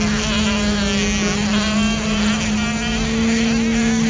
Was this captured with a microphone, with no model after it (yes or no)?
yes